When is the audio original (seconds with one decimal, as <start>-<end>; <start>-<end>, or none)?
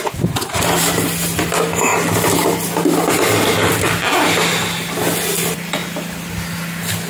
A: 1.9-3.1; 5.8-7.1